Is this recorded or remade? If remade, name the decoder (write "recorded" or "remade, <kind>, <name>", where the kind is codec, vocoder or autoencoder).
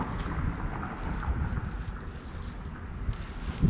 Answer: recorded